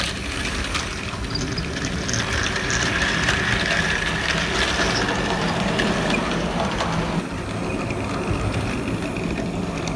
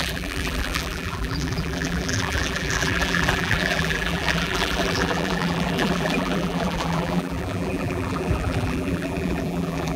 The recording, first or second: first